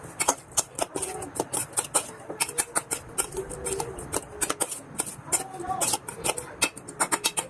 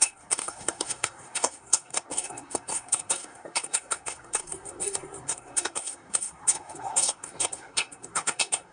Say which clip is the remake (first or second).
second